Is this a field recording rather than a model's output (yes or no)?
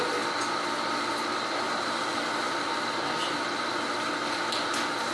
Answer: yes